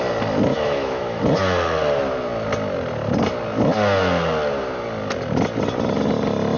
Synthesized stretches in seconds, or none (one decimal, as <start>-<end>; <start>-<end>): 0.5-1.2